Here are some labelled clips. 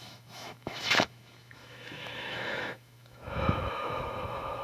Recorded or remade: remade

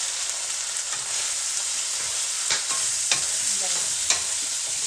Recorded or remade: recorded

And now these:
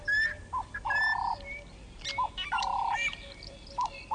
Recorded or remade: remade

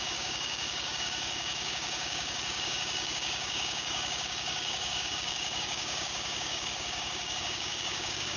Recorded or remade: remade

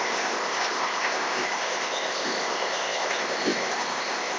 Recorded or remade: remade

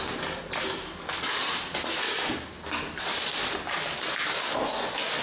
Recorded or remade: recorded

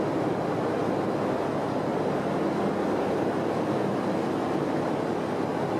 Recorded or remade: recorded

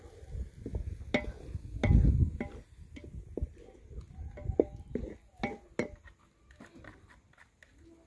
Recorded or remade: recorded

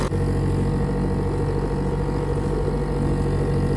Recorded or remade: recorded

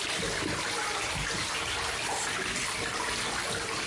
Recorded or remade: recorded